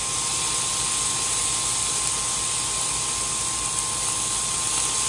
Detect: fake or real real